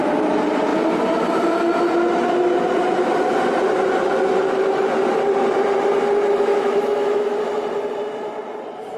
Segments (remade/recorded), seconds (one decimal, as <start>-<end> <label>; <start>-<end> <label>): 0.0-6.5 recorded; 6.5-7.4 remade; 7.4-9.0 recorded